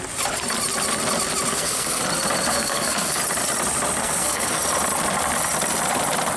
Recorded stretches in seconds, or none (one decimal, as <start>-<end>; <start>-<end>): 0.0-1.5; 2.0-2.5; 3.2-4.0; 4.6-6.4